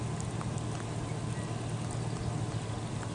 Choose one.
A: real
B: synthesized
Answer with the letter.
A